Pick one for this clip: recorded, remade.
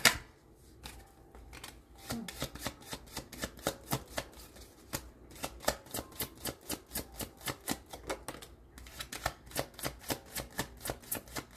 recorded